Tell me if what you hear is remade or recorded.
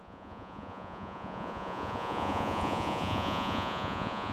remade